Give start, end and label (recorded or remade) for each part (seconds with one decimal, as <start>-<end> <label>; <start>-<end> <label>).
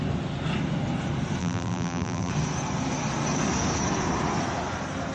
0.0-1.4 recorded; 1.4-2.3 remade; 2.3-5.1 recorded